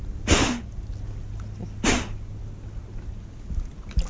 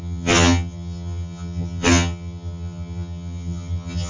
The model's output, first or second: second